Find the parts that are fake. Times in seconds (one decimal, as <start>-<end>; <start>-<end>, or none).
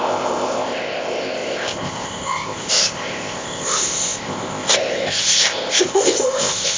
0.0-6.8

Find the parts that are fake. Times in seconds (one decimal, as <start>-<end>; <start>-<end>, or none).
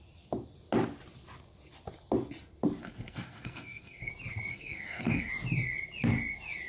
2.8-4.1; 4.5-5.3